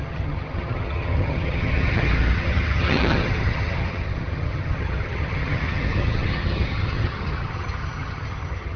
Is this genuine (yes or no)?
no